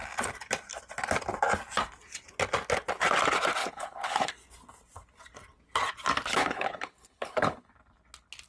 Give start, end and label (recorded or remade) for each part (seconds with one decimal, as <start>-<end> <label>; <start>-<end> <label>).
0.0-3.6 recorded; 3.6-4.3 remade; 4.3-6.3 recorded; 6.3-7.7 remade; 7.7-8.5 recorded